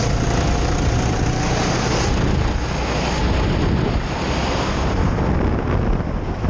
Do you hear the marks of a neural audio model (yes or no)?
no